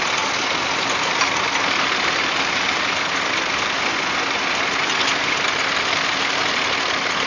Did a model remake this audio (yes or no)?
no